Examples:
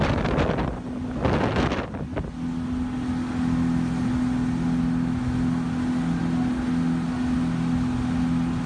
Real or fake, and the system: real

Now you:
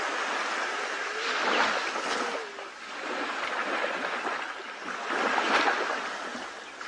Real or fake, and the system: real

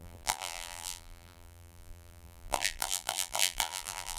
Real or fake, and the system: fake, vocoder, BigVGAN v2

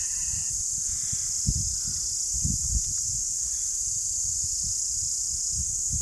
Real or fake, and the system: real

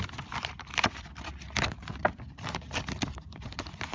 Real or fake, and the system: fake, vocoder, BigVGAN v2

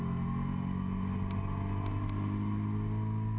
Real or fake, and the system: real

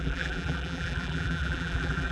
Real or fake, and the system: fake, vocoder, BigVGAN v2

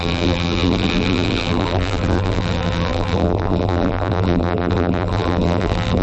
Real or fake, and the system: fake, vocoder, BigVGAN v2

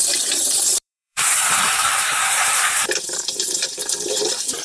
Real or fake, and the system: fake, vocoder, BigVGAN v2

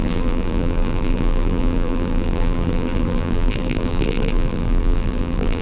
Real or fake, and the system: fake, vocoder, BigVGAN v2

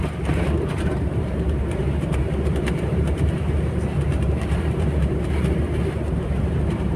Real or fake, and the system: fake, vocoder, BigVGAN v2